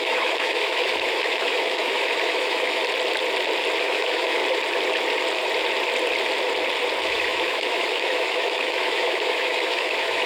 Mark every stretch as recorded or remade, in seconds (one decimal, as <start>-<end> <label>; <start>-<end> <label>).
0.0-2.8 remade; 2.8-3.8 recorded; 3.8-4.4 remade; 4.4-7.0 recorded; 7.0-10.3 remade

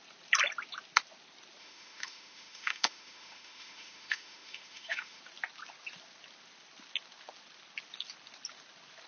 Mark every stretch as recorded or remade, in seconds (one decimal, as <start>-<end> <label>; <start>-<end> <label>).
0.0-1.6 recorded; 1.6-5.2 remade; 5.2-9.1 recorded